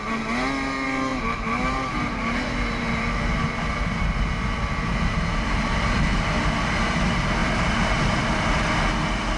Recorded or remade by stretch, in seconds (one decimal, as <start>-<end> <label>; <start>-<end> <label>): 0.0-1.1 recorded; 1.1-6.2 remade; 6.2-7.4 recorded; 7.4-8.2 remade; 8.2-9.4 recorded